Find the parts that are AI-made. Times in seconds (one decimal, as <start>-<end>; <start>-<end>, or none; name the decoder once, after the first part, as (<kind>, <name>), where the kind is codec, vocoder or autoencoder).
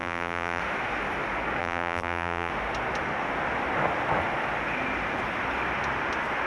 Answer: 0.0-0.6 (vocoder, BigVGAN v2); 1.6-2.5